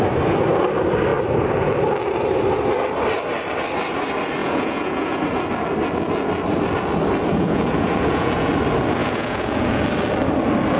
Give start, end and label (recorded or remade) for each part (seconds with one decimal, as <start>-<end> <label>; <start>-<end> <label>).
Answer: 0.0-4.4 recorded; 4.4-5.2 remade; 5.2-7.3 recorded; 7.3-8.5 remade; 8.5-9.0 recorded; 9.0-9.8 remade; 9.8-10.8 recorded